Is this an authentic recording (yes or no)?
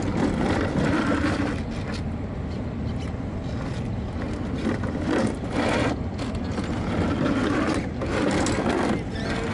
yes